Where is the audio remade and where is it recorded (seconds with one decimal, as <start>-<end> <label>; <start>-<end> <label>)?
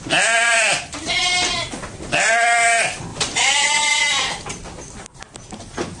0.0-3.1 recorded; 3.1-4.0 remade; 4.0-6.0 recorded